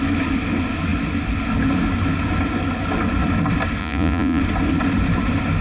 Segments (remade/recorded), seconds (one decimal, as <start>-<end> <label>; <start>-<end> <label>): 0.0-3.8 recorded; 3.8-4.4 remade; 4.4-5.6 recorded